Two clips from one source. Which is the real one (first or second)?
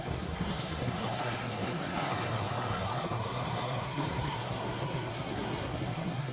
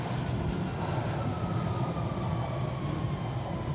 second